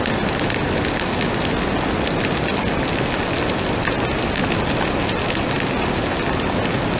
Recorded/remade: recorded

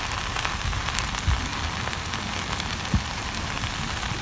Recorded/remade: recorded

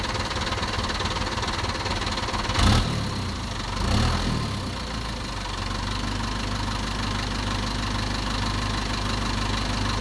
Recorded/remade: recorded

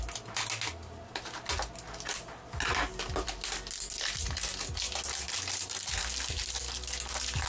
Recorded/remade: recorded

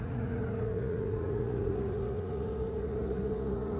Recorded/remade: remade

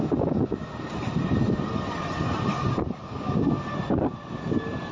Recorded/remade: recorded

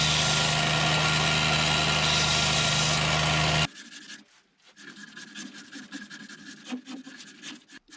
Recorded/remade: recorded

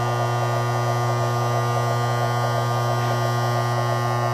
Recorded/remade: recorded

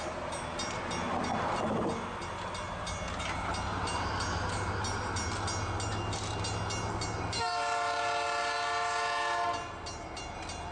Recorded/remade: recorded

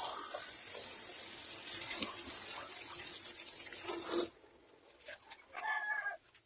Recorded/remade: recorded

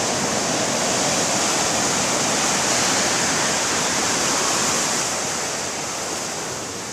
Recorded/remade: recorded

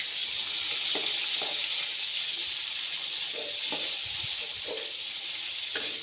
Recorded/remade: recorded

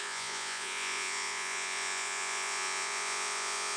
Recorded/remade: remade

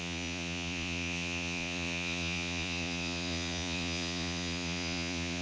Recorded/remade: remade